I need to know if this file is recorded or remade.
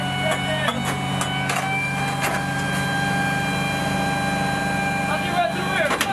recorded